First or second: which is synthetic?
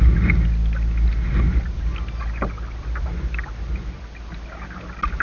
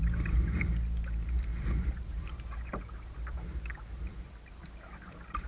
second